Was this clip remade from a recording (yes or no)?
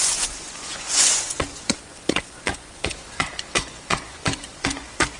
yes